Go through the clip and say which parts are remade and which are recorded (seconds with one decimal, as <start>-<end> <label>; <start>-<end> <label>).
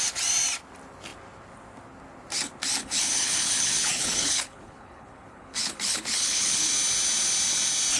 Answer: 0.0-2.8 recorded; 2.8-6.7 remade; 6.7-8.0 recorded